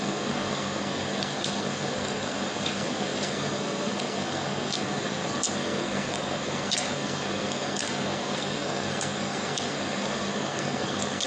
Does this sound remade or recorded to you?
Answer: remade